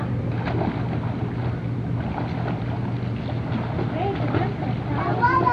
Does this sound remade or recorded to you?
recorded